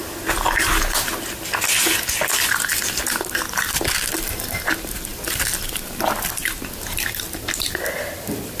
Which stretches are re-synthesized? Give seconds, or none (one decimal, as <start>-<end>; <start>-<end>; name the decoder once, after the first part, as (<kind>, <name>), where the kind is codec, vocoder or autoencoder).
none